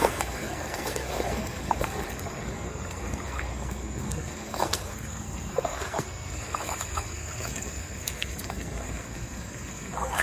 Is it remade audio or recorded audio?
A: remade